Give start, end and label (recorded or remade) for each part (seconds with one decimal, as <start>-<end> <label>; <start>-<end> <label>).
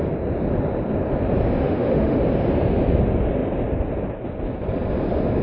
0.0-1.6 recorded; 1.6-2.2 remade; 2.2-5.4 recorded